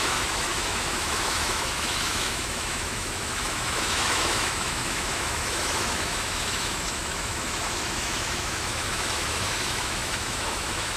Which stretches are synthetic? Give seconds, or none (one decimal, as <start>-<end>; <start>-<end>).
0.0-11.0